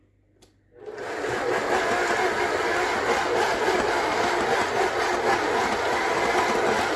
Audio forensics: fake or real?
real